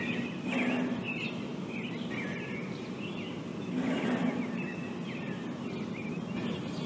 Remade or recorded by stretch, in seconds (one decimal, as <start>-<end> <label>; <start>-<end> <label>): 0.0-6.9 recorded